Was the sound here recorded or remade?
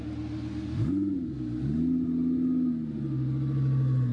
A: recorded